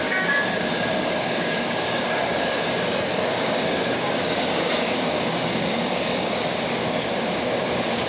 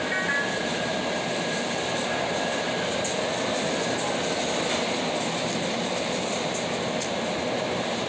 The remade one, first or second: first